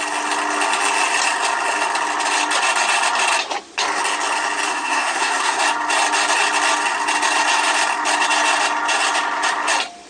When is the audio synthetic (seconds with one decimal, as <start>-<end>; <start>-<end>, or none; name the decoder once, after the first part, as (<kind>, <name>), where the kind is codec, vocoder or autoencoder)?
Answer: 4.7-5.6 (codec, SNAC)